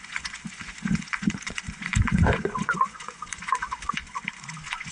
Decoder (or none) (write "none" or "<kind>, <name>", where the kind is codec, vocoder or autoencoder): vocoder, Vocos